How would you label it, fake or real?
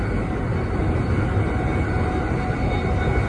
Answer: real